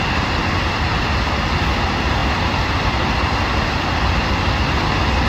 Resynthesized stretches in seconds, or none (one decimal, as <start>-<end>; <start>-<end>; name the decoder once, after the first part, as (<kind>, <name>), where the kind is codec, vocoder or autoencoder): none

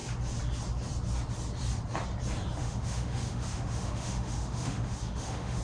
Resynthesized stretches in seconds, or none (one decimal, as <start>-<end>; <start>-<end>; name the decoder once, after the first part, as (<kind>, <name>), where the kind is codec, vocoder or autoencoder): 2.6-5.6 (autoencoder, DAC-VAE)

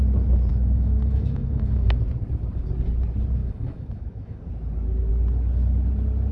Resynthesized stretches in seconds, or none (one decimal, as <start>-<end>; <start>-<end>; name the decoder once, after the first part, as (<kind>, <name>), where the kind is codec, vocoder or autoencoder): 0.5-2.0 (autoencoder, DAC-VAE); 3.4-4.4

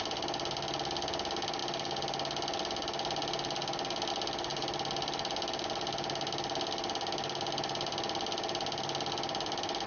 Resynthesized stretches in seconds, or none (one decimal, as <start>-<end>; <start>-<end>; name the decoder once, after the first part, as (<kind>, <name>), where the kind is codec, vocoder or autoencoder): none

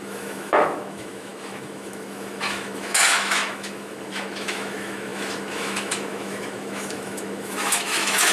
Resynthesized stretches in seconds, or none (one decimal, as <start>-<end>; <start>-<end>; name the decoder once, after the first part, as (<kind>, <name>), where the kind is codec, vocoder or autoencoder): 0.0-8.3 (autoencoder, DAC-VAE)

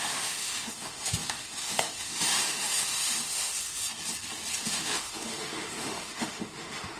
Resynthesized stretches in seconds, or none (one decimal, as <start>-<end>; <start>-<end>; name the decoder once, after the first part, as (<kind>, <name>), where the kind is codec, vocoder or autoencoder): 0.0-3.8 (autoencoder, DAC-VAE); 4.6-7.0

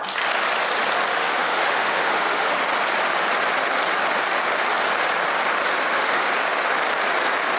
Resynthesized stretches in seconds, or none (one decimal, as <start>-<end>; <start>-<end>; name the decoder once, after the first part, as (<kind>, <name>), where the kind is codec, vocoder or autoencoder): 1.1-2.6 (autoencoder, DAC-VAE); 5.8-6.3